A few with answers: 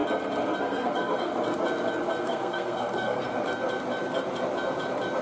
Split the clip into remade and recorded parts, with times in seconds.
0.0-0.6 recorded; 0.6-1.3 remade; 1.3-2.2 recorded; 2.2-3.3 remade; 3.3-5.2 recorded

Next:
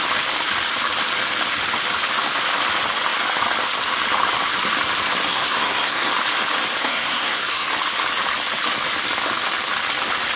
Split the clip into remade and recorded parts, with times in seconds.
0.0-5.3 recorded; 5.3-6.1 remade; 6.1-6.8 recorded; 6.8-7.7 remade; 7.7-10.4 recorded